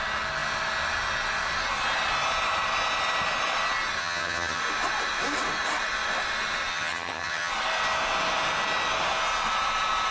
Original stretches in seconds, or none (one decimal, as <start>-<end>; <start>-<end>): 0.0-4.0; 4.6-6.7; 7.5-10.1